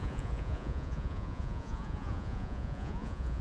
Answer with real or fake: fake